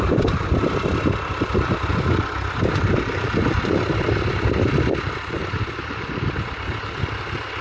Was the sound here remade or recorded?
remade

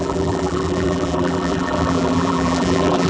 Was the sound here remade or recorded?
remade